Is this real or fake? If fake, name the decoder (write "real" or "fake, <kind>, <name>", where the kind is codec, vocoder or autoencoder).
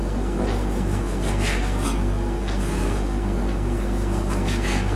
fake, codec, SNAC